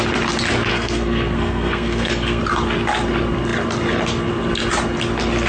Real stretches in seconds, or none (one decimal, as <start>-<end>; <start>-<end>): 0.0-0.7; 2.4-5.5